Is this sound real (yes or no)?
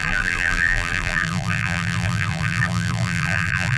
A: no